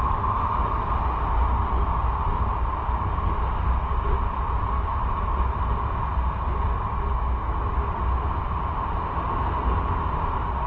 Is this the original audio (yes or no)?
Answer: yes